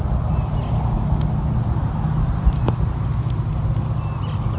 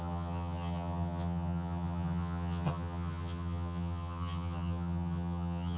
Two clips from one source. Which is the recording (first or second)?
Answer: first